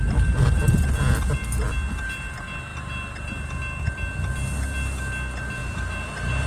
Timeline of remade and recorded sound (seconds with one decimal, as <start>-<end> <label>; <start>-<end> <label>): 0.0-6.5 recorded